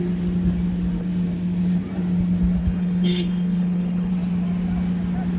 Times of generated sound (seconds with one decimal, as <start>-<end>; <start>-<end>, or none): 2.6-4.1